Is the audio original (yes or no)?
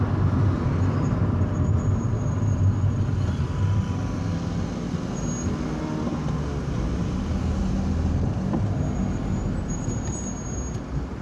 yes